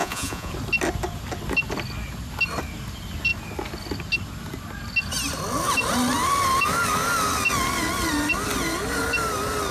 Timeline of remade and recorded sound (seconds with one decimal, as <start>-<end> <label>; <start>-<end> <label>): 0.0-0.5 remade; 0.5-9.7 recorded